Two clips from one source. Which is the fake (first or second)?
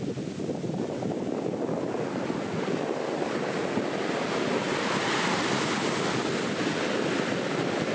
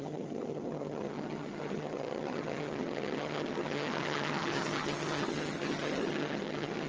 second